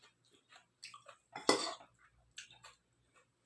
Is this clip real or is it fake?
real